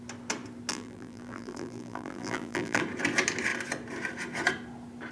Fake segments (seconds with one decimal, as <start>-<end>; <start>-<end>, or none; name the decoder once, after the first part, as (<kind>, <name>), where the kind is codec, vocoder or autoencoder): 0.7-2.8 (vocoder, BigVGAN v2)